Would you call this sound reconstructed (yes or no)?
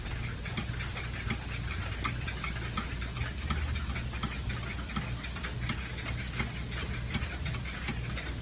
no